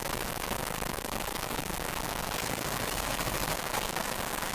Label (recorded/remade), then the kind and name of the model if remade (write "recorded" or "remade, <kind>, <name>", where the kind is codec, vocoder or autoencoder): remade, codec, DAC